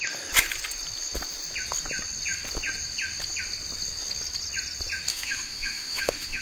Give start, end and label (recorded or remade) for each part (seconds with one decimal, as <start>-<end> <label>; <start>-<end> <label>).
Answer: 0.0-5.1 recorded; 5.1-6.4 remade